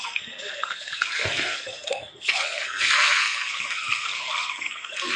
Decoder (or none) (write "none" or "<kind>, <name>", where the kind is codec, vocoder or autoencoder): codec, SNAC